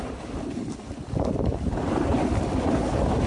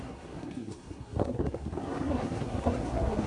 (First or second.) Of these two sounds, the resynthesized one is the second